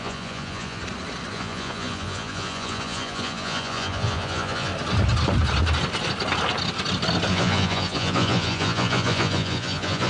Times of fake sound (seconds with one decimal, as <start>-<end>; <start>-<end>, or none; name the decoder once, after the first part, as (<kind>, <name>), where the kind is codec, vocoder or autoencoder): 0.0-0.8 (vocoder, Vocos); 1.3-4.7; 7.3-10.1